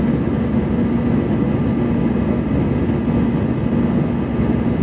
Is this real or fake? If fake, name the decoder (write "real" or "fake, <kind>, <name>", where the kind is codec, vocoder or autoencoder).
real